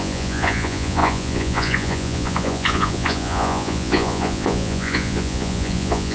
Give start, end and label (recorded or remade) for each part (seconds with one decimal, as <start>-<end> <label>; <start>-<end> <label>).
0.0-6.1 remade